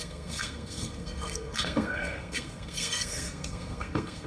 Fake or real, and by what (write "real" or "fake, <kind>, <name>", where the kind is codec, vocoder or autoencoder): fake, codec, SNAC